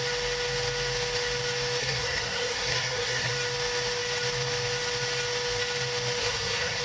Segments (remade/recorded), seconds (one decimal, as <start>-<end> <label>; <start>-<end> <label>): 0.0-1.8 recorded; 1.8-3.3 remade; 3.3-6.2 recorded; 6.2-6.8 remade